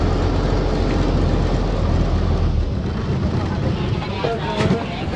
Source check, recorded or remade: recorded